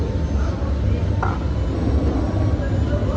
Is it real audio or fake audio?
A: real